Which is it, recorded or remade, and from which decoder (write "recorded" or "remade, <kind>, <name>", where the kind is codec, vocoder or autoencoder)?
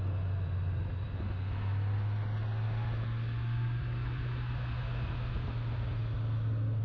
recorded